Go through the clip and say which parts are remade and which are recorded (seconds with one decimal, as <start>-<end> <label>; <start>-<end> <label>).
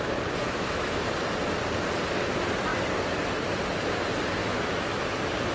0.0-0.4 recorded; 0.4-1.0 remade; 1.0-4.4 recorded; 4.4-5.0 remade; 5.0-5.5 recorded